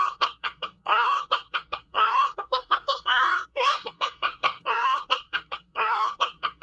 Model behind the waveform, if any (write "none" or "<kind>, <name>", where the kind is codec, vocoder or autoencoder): codec, SNAC